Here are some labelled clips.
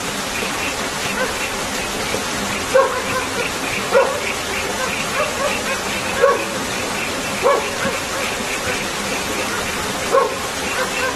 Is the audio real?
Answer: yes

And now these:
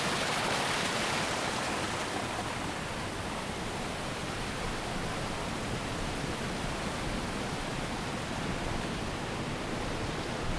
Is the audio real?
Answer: yes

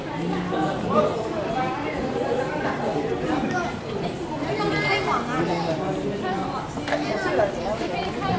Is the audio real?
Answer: yes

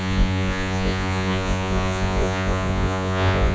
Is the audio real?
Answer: no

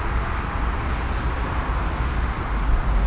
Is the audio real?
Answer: yes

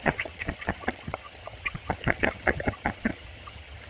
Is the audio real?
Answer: no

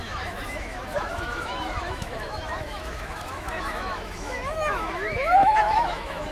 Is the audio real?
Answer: no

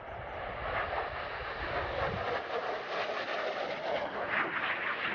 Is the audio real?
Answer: yes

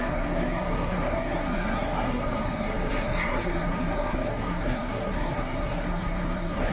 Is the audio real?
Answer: no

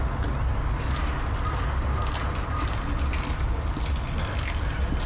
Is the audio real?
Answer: yes